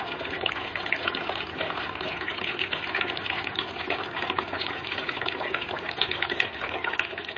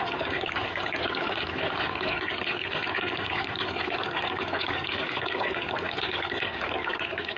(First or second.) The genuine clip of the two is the first